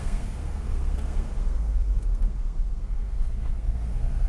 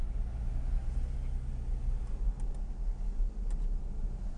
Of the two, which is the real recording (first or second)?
second